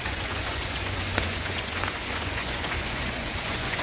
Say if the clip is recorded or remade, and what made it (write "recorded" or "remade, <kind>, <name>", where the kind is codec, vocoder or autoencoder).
remade, vocoder, Vocos